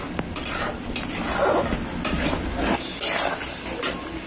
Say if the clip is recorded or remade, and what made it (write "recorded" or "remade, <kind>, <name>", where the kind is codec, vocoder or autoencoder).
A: recorded